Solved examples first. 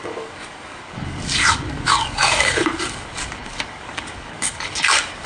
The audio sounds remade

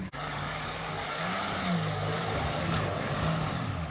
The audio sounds remade